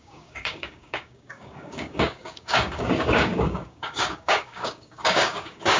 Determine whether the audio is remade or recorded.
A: remade